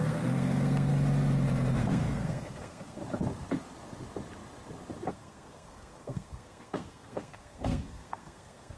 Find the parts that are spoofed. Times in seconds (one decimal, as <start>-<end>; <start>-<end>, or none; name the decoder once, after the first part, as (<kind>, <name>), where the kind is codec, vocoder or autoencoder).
0.0-0.9 (codec, SNAC); 1.8-3.0; 5.1-8.8